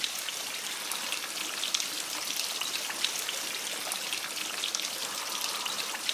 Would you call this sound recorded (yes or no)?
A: yes